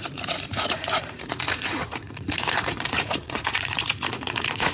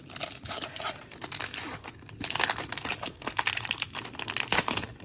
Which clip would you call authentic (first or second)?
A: second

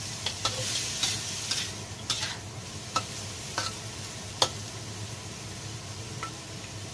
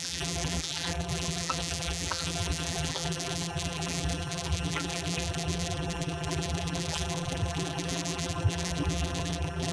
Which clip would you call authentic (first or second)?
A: first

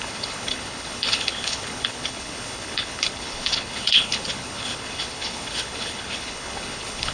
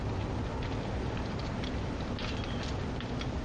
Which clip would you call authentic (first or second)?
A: second